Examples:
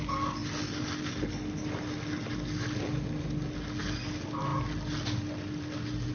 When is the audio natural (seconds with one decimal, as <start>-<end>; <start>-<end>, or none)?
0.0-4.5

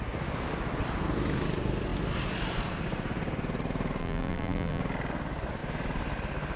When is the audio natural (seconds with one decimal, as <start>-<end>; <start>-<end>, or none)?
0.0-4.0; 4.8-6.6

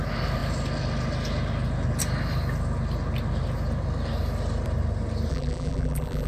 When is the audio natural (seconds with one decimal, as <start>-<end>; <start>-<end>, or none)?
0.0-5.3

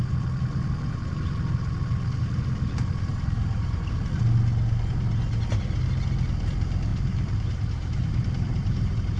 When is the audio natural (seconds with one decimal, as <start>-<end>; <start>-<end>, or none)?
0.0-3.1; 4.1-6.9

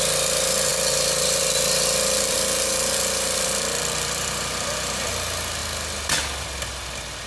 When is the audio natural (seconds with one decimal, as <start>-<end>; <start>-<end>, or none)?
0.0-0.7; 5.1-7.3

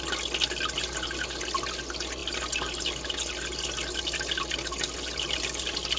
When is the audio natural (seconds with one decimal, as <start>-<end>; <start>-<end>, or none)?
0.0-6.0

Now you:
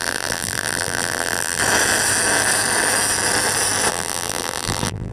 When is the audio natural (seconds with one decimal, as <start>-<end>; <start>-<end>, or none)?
1.6-3.9

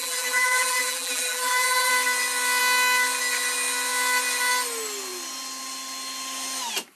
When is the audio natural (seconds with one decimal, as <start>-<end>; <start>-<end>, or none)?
1.9-7.0